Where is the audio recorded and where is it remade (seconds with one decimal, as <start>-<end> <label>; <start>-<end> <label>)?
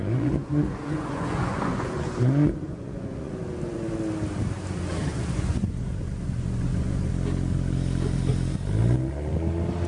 0.0-3.3 remade; 3.3-5.1 recorded; 5.1-7.1 remade; 7.1-9.9 recorded